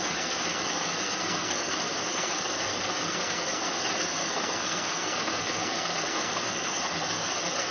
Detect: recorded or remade remade